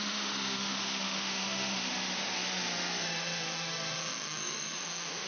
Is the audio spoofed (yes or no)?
yes